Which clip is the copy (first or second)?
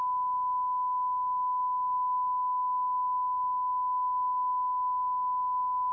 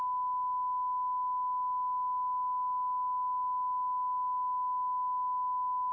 first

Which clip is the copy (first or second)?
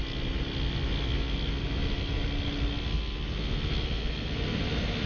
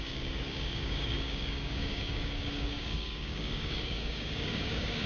second